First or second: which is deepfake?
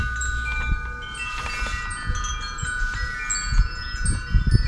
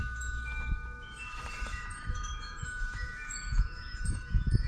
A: second